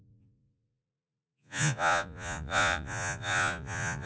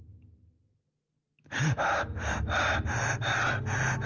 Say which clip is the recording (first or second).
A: second